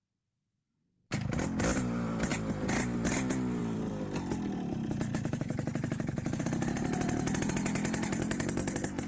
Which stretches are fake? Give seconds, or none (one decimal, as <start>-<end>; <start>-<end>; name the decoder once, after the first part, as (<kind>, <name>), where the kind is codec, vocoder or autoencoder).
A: 0.0-2.3 (vocoder, BigVGAN v2); 3.6-9.1